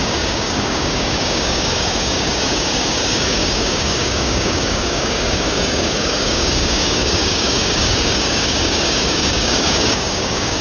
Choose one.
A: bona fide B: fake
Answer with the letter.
B